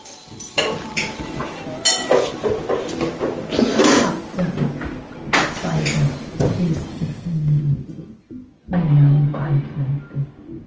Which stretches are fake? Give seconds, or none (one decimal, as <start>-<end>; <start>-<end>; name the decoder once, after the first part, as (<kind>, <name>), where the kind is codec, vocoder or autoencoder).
6.9-7.6 (codec, SNAC)